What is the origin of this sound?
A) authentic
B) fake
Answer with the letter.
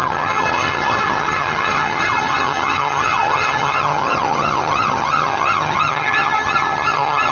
B